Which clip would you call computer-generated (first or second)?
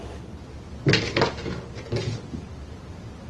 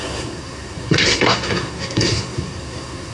second